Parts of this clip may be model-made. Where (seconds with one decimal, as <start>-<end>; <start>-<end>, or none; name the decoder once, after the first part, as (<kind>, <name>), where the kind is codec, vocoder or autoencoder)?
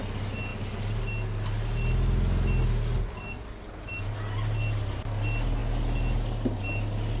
none